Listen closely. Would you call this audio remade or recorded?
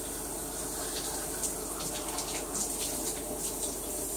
recorded